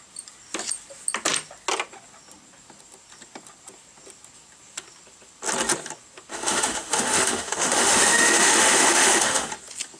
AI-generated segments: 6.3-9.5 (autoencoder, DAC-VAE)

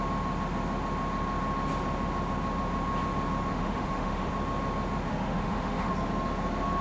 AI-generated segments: 3.5-4.3 (autoencoder, DAC-VAE); 5.1-5.9

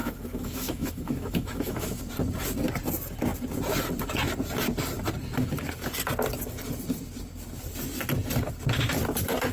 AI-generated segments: 0.0-2.0 (autoencoder, DAC-VAE)

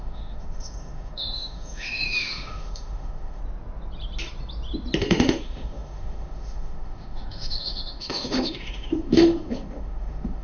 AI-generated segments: 0.0-3.4 (autoencoder, DAC-VAE); 5.0-10.4

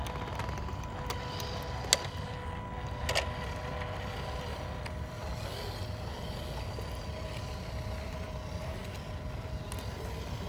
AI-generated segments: none

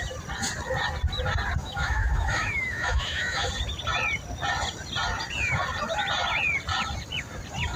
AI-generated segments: 1.6-3.5 (autoencoder, DAC-VAE)